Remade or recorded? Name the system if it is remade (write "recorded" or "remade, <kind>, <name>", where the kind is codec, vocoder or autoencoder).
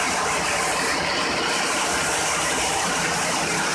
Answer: remade, vocoder, BigVGAN v2